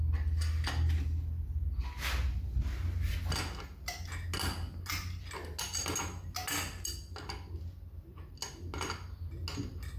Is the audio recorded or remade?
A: recorded